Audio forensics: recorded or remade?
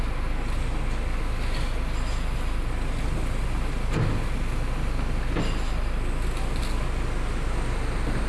recorded